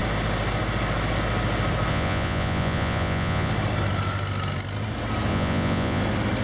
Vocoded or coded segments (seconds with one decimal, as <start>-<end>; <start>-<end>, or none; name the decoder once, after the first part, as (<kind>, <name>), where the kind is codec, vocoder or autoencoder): 1.9-3.5 (vocoder, Vocos); 5.3-6.0